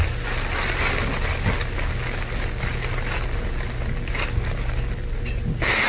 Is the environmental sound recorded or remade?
recorded